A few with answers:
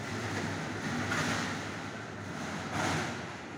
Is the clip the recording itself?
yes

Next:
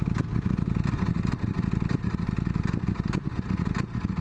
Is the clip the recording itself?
yes